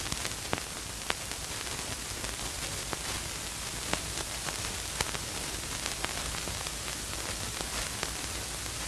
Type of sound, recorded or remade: recorded